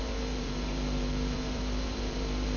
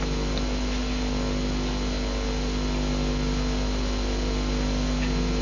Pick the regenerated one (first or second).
first